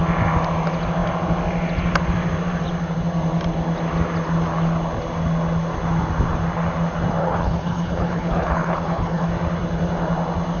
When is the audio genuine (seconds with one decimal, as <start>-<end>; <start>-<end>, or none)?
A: 0.0-7.2; 9.3-10.6